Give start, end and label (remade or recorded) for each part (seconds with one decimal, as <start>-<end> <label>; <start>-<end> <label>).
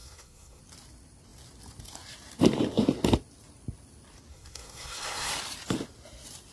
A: 0.0-0.6 remade; 0.6-4.3 recorded; 4.3-5.3 remade; 5.3-6.5 recorded